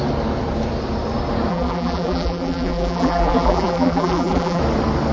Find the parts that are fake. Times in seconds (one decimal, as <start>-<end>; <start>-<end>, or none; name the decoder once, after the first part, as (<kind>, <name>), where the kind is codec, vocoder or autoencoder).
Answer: 1.5-4.6 (vocoder, BigVGAN v2)